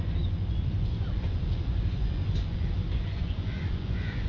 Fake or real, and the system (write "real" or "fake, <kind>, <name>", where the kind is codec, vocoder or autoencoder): fake, vocoder, Vocos